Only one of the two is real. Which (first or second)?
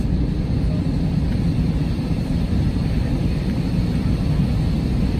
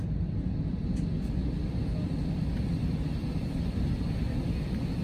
second